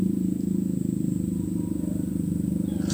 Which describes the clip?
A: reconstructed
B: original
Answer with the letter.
B